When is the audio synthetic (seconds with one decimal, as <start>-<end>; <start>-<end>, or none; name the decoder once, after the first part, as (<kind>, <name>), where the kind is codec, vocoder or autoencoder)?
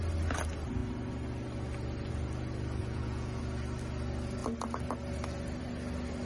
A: 2.8-3.4 (vocoder, Vocos)